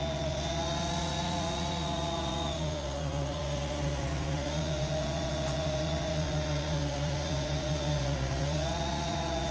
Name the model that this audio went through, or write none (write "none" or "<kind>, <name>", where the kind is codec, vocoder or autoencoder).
vocoder, Vocos